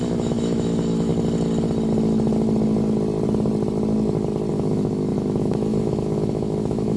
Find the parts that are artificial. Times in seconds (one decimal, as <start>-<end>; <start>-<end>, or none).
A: 0.0-1.1; 4.5-7.0